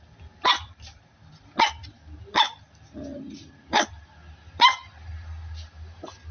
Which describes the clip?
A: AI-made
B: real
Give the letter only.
B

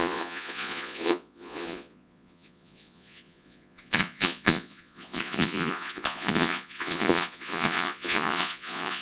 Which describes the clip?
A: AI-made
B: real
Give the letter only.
A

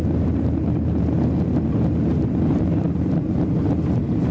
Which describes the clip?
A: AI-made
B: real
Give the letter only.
B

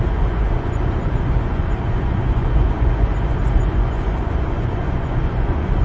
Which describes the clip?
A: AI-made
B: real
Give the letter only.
A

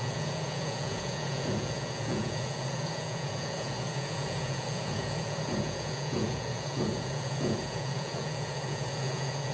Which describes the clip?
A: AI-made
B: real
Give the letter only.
A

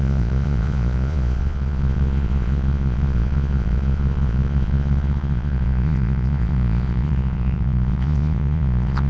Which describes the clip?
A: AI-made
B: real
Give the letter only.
A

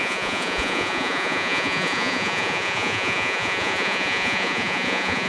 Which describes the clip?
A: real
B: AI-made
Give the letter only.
B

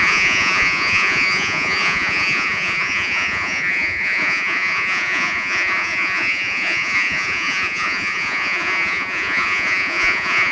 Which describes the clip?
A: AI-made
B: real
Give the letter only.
A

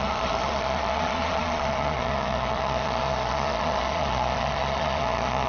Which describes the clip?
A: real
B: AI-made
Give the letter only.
B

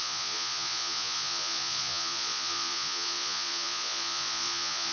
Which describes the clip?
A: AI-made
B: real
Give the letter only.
A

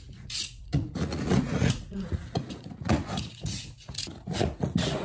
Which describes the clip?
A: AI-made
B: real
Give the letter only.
A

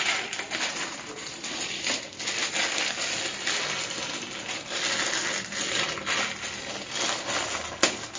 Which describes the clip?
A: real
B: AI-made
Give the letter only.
A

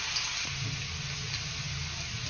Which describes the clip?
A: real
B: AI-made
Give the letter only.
A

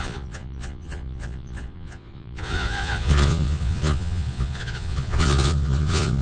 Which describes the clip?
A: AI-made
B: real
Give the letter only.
A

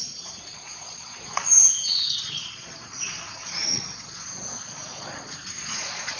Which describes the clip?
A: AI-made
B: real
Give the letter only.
A